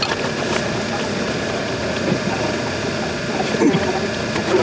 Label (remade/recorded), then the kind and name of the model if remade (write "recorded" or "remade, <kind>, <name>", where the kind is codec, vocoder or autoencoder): recorded